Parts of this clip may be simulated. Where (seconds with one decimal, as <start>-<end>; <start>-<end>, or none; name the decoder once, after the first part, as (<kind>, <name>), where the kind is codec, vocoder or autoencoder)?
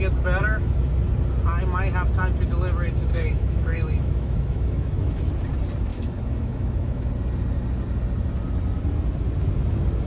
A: 3.1-5.3 (autoencoder, DAC-VAE); 5.9-7.1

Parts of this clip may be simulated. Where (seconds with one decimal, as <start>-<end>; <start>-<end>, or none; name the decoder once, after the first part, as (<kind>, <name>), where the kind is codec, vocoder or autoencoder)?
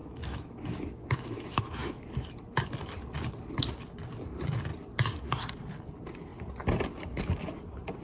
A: 0.0-2.1 (autoencoder, DAC-VAE)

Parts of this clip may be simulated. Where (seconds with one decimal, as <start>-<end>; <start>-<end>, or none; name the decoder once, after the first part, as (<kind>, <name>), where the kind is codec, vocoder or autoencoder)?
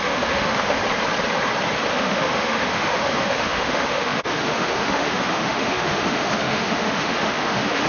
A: 0.0-0.8 (autoencoder, DAC-VAE); 1.9-7.9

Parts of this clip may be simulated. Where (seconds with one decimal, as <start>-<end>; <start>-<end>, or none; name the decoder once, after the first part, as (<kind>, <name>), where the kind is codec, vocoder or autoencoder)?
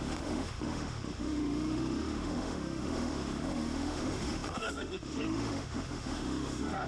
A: 0.0-6.9 (autoencoder, DAC-VAE)